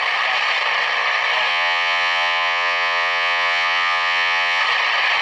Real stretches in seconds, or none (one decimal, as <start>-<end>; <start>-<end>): 0.0-1.5; 4.6-5.2